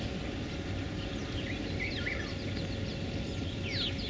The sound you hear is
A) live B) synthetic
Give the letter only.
A